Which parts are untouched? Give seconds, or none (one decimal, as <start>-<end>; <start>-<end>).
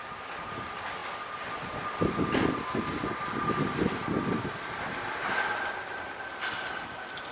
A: 0.0-7.3